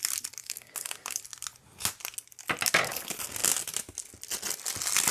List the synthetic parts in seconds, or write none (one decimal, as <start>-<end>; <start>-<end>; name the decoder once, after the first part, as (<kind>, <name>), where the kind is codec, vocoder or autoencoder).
0.4-1.2 (codec, DAC)